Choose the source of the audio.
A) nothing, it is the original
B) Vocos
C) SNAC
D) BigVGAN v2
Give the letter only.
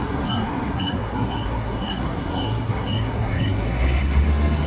C